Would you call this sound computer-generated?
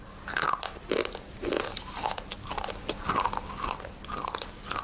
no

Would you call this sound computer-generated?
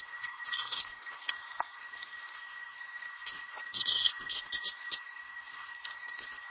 yes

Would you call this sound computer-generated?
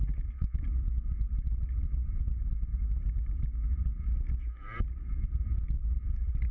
no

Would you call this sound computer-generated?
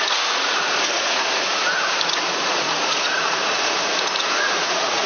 yes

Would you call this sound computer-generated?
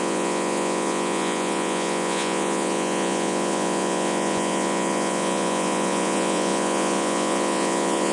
yes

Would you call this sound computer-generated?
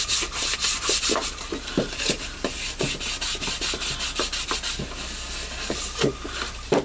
no